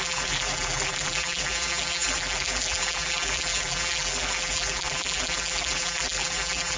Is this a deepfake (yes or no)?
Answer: yes